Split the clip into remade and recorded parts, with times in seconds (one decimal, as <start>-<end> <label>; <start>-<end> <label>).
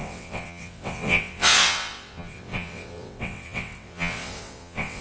0.0-5.0 remade